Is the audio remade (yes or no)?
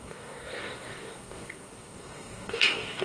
yes